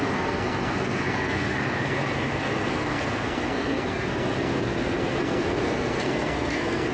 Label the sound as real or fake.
fake